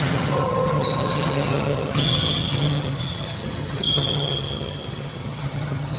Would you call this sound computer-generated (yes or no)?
yes